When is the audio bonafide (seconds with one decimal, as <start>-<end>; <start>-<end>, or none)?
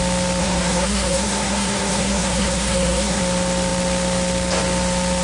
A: 0.0-0.4; 3.2-5.2